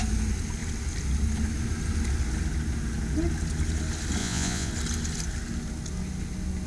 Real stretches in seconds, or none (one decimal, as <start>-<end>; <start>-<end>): 0.0-4.2; 4.7-6.7